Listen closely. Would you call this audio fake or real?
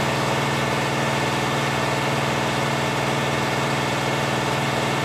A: real